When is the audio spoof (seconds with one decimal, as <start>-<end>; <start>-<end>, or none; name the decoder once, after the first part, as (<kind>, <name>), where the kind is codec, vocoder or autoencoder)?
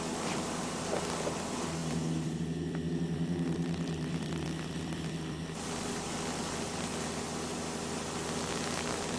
1.8-6.1 (vocoder, BigVGAN v2)